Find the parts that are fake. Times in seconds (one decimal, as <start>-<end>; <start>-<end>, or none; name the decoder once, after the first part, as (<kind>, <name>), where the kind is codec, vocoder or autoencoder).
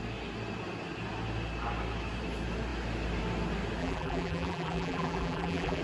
3.8-5.8 (vocoder, BigVGAN v2)